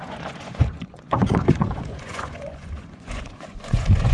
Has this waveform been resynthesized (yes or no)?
yes